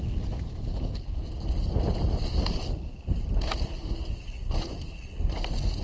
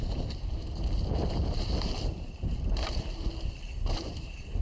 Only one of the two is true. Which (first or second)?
first